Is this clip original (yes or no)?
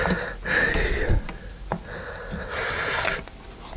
yes